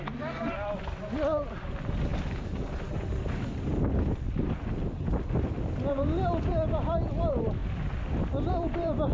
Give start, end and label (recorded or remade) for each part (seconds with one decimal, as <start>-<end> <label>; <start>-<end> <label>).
0.0-9.1 recorded